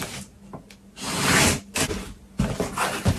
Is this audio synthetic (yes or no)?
no